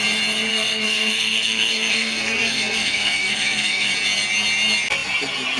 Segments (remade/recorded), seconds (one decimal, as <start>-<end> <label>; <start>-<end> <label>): 0.0-0.5 recorded; 0.5-3.9 remade; 3.9-5.6 recorded